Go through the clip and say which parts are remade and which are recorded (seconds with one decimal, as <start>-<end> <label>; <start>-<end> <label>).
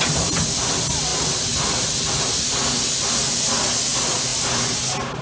0.0-5.2 recorded